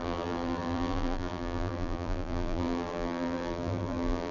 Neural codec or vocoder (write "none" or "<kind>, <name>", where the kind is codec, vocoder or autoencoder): vocoder, BigVGAN v2